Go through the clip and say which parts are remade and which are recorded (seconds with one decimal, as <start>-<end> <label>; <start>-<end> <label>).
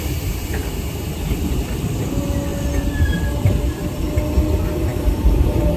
0.0-2.5 recorded; 2.5-4.0 remade; 4.0-5.8 recorded